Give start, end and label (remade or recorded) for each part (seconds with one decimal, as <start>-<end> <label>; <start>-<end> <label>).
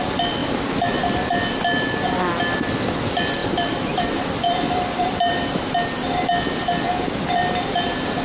0.0-3.4 recorded; 3.4-5.4 remade; 5.4-8.2 recorded